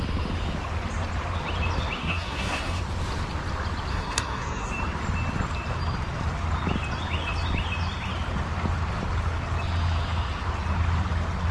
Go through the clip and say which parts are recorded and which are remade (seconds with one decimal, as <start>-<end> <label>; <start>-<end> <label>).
0.0-2.0 recorded; 2.0-2.8 remade; 2.8-3.9 recorded; 3.9-4.7 remade; 4.7-11.5 recorded